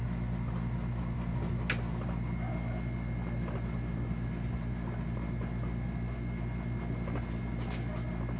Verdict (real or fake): real